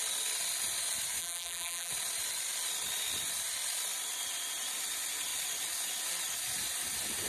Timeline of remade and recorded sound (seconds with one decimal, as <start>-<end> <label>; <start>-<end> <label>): 0.0-1.2 recorded; 1.2-1.9 remade; 1.9-7.3 recorded